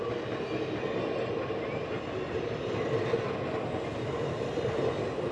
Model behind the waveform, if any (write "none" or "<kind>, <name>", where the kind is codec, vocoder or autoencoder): none